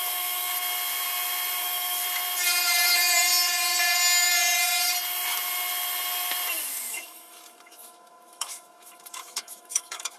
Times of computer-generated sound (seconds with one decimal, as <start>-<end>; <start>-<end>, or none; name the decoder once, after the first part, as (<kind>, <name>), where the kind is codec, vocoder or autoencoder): 0.0-0.5 (autoencoder, DAC-VAE); 1.6-2.0; 6.9-10.2

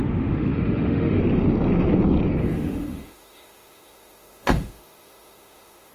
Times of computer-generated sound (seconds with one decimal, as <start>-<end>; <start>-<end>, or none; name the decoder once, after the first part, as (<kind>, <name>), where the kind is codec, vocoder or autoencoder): 0.0-1.2 (autoencoder, DAC-VAE); 2.4-5.9

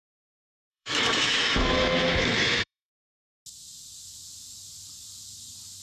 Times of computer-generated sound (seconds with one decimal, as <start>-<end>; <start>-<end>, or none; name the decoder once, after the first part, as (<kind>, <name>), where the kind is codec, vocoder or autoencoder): 0.7-2.9 (autoencoder, DAC-VAE)

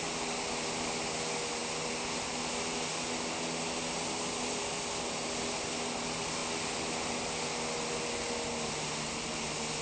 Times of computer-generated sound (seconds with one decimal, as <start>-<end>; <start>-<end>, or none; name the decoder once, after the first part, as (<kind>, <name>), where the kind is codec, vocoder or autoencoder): none

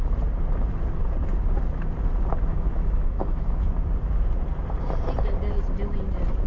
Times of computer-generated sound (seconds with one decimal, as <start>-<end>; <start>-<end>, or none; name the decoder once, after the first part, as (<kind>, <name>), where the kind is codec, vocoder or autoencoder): 2.5-3.7 (autoencoder, DAC-VAE)

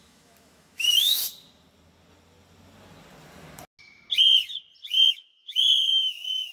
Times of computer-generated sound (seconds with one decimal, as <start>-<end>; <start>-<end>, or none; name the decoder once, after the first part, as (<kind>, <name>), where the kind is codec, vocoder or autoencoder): 0.0-1.2 (autoencoder, DAC-VAE); 5.1-6.5